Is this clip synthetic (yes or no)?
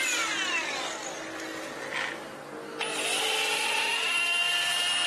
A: no